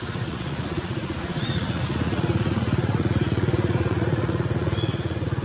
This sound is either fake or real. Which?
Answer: fake